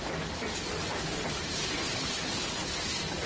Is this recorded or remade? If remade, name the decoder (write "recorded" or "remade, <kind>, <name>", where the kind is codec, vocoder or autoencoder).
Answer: recorded